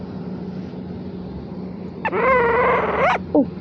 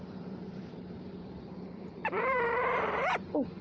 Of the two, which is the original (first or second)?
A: first